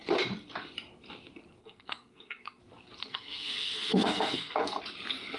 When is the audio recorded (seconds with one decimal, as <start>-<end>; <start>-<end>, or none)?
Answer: 0.0-1.6; 2.6-3.0; 4.8-5.4